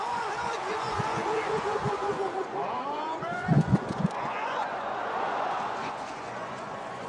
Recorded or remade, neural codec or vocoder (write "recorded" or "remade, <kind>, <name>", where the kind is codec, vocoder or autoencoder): remade, vocoder, Vocos